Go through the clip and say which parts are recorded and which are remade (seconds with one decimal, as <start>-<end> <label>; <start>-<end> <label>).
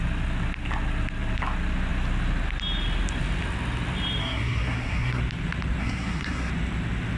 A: 0.0-4.2 recorded; 4.2-5.2 remade; 5.2-5.8 recorded; 5.8-6.5 remade; 6.5-7.2 recorded